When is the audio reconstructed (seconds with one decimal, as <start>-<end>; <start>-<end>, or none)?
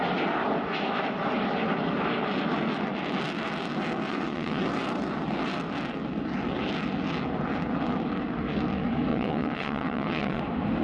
4.1-4.6; 9.1-10.4